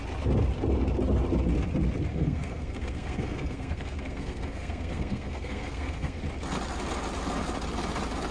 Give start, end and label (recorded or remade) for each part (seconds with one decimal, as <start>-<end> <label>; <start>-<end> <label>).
0.0-2.1 recorded; 2.1-6.2 remade; 6.2-8.3 recorded

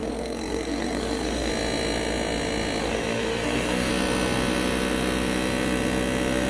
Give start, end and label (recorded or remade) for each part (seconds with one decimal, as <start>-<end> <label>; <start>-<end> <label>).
0.0-1.5 remade; 1.5-2.8 recorded; 2.8-3.9 remade; 3.9-6.5 recorded

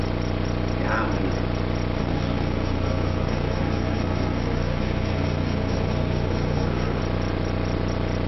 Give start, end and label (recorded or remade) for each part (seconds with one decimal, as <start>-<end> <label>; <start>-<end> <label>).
0.0-2.0 recorded; 2.0-7.0 remade; 7.0-8.3 recorded

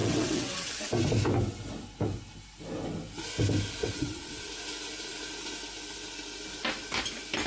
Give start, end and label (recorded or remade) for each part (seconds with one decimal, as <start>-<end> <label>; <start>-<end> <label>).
0.0-0.9 remade; 0.9-3.8 recorded; 3.8-4.5 remade; 4.5-7.5 recorded

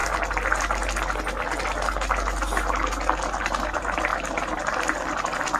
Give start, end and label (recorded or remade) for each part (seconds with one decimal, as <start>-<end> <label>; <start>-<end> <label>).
0.0-3.4 recorded; 3.4-4.1 remade; 4.1-5.6 recorded